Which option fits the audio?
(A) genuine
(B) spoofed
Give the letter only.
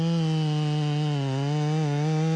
A